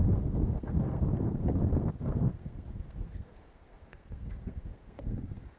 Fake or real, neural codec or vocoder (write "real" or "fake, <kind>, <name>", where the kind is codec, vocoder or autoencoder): fake, codec, SNAC